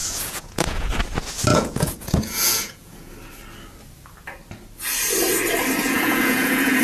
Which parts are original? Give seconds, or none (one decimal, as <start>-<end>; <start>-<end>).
0.9-1.5; 3.1-5.8